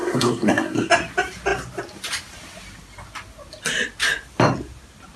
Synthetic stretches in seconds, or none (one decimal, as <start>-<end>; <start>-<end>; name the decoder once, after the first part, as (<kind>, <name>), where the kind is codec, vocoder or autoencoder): 0.0-0.9 (codec, SNAC)

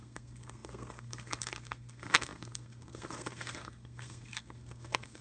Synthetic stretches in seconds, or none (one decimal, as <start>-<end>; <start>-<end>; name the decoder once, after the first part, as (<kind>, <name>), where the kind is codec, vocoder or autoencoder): 0.0-5.2 (codec, SNAC)